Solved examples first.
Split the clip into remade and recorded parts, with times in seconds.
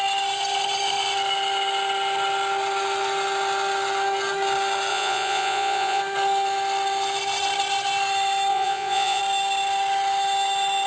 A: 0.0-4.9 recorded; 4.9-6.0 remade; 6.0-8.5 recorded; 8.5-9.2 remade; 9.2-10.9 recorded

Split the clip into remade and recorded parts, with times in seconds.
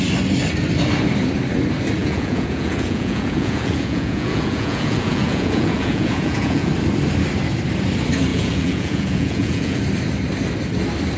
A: 0.0-2.0 recorded; 2.0-6.7 remade; 6.7-8.3 recorded; 8.3-9.8 remade; 9.8-11.2 recorded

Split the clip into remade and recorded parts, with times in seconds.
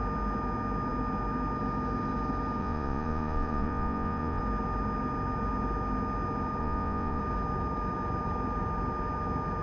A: 0.0-2.6 recorded; 2.6-4.4 remade; 4.4-6.6 recorded; 6.6-7.2 remade; 7.2-9.6 recorded